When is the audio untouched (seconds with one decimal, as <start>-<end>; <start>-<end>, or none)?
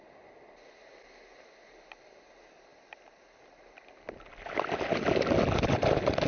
0.0-6.3